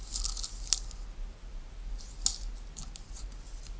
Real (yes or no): yes